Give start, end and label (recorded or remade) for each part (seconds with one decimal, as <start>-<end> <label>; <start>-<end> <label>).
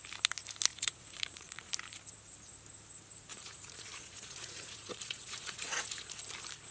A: 0.0-0.7 recorded; 0.7-1.7 remade; 1.7-3.3 recorded; 3.3-6.1 remade; 6.1-6.7 recorded